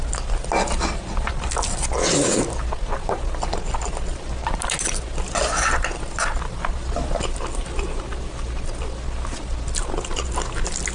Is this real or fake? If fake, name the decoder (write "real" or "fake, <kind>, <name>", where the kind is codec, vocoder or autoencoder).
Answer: real